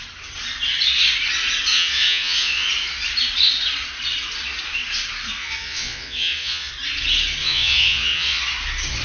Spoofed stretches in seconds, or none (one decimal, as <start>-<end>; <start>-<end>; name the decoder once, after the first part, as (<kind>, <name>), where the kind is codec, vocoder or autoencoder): 1.7-2.7 (vocoder, Vocos); 5.4-6.7; 7.4-8.4